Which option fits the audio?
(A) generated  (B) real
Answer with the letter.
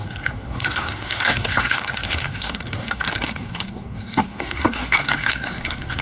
A